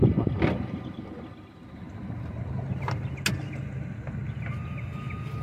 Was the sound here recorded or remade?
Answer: recorded